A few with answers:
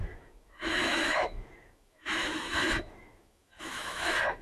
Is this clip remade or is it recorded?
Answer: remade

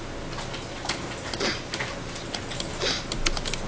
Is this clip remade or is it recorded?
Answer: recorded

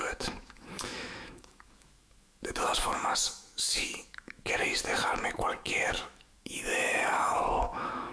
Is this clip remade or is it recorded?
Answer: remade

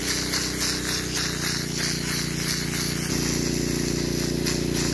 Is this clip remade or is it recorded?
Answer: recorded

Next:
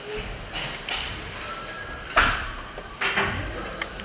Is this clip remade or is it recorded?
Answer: recorded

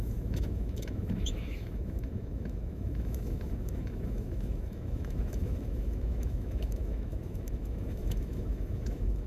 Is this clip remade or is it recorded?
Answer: remade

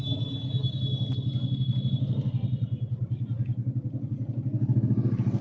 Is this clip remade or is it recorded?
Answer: recorded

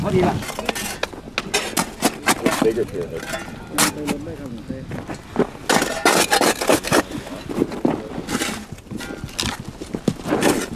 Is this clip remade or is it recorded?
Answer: recorded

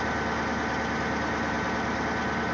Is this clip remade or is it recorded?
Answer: recorded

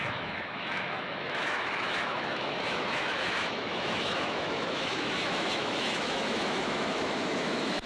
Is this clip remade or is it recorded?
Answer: remade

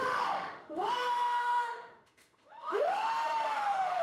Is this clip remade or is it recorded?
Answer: remade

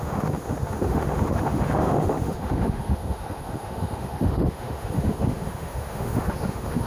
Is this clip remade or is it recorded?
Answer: remade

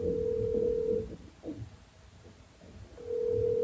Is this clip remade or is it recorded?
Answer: recorded